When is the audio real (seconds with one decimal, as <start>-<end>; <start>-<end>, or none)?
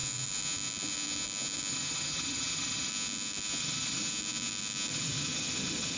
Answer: 0.0-1.7; 2.9-3.6; 4.1-4.9